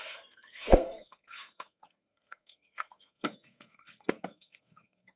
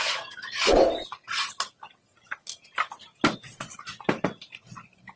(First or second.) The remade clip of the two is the first